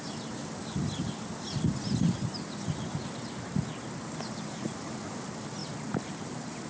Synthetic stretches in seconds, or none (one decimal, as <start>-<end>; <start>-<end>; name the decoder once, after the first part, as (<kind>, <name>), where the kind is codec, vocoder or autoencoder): 0.0-0.4 (vocoder, BigVGAN v2); 3.8-6.7